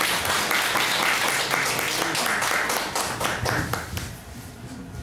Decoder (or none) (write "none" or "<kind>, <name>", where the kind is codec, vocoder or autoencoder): none